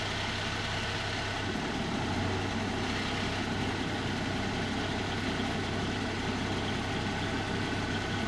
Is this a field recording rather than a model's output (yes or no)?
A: yes